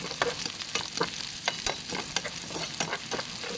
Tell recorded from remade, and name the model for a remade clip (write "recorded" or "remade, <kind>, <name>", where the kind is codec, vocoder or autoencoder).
recorded